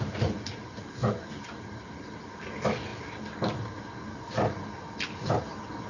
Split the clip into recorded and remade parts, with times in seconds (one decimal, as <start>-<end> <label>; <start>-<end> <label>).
0.0-5.9 recorded